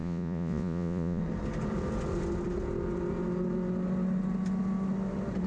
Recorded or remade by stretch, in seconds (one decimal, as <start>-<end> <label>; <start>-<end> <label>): 0.0-1.2 remade; 1.2-5.5 recorded